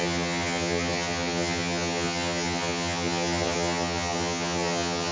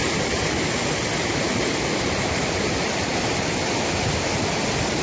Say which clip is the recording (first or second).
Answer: second